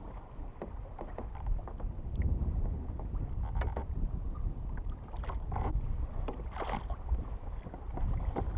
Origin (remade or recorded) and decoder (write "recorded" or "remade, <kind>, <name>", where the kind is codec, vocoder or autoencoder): recorded